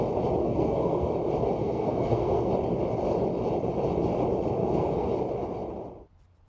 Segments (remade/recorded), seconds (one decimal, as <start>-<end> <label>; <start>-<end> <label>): 0.0-0.4 recorded; 0.4-1.1 remade; 1.1-1.6 recorded; 1.6-2.5 remade; 2.5-4.6 recorded; 4.6-5.1 remade; 5.1-6.5 recorded